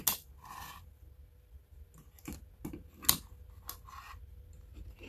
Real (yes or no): yes